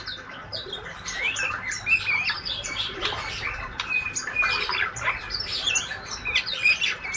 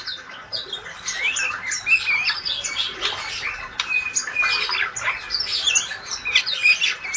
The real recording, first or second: second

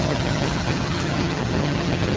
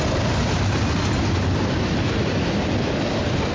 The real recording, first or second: second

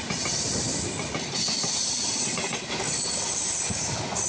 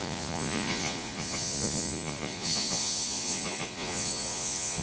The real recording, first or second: first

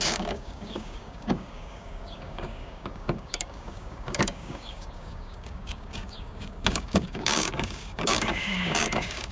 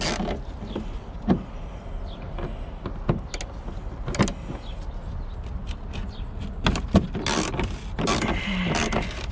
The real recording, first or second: second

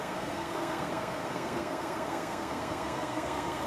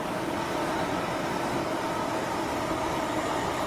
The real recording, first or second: second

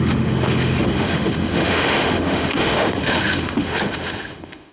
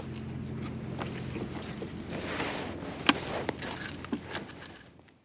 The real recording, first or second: second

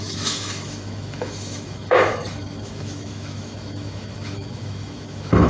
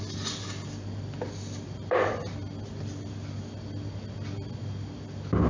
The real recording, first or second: second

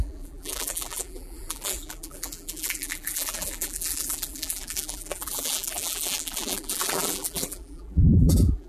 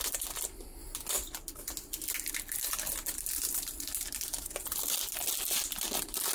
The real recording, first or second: second